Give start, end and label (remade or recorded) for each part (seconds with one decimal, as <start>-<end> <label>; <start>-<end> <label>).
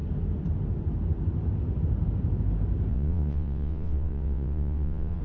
0.0-2.9 recorded; 2.9-5.2 remade